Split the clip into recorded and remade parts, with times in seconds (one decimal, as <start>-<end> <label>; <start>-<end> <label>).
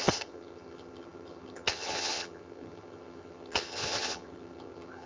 0.0-5.1 remade